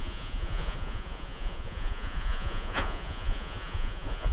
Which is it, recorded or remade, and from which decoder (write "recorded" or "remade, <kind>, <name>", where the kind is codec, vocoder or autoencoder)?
remade, vocoder, Vocos